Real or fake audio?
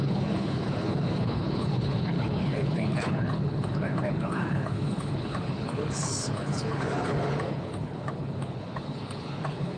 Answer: fake